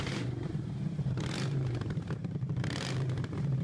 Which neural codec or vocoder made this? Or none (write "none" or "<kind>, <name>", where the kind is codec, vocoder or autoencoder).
vocoder, BigVGAN v2